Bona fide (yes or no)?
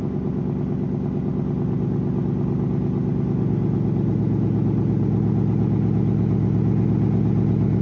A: yes